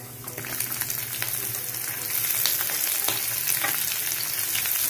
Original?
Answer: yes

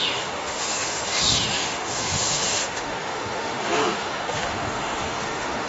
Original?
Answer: no